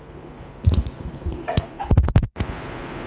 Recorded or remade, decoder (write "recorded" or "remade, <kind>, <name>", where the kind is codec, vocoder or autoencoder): remade, vocoder, Vocos